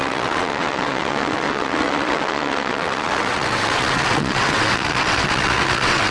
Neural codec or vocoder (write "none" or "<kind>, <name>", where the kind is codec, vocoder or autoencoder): vocoder, WaveNeXt